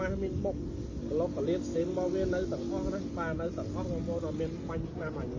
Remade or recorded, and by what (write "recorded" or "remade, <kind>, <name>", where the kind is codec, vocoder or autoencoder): recorded